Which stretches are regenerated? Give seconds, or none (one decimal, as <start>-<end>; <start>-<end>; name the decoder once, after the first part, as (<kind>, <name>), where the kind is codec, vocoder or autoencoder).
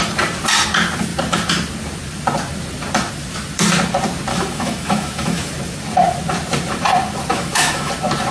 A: 4.3-5.5 (autoencoder, DAC-VAE); 7.3-7.9